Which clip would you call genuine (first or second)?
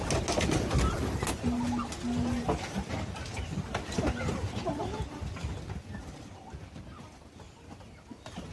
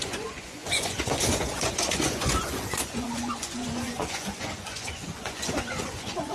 first